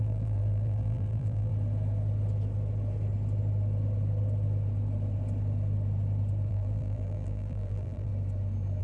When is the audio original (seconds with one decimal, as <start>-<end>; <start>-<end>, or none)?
1.5-6.5; 8.1-8.8